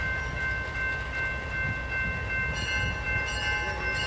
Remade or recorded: recorded